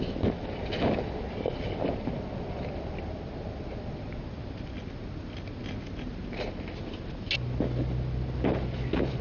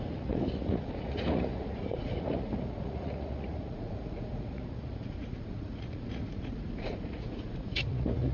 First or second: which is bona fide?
first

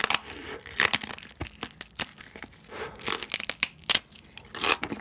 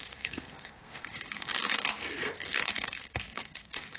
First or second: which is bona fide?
first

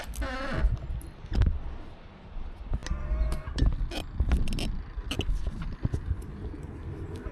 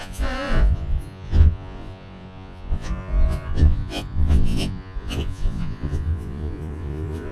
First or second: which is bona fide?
first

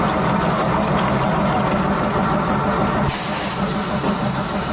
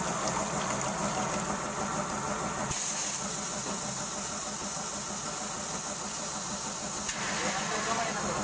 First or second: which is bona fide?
second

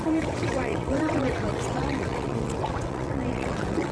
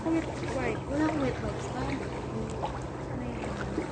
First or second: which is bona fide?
second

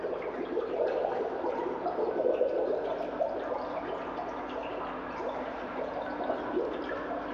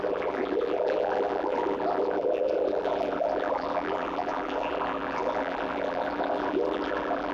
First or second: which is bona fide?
first